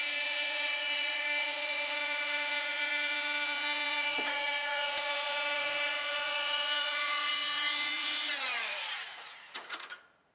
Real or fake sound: fake